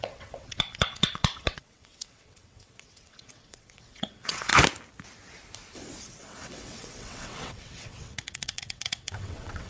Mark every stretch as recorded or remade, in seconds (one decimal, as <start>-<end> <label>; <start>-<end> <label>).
0.0-4.5 remade; 4.5-6.0 recorded; 6.0-9.7 remade